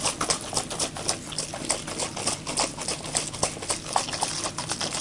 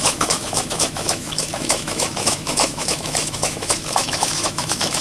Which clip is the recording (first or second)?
first